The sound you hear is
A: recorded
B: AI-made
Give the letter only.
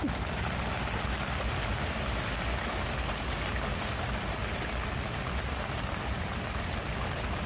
A